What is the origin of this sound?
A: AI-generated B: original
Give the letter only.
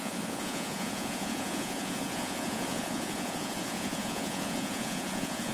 A